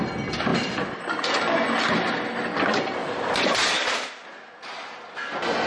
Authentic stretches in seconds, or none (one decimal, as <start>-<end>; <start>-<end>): 0.0-5.7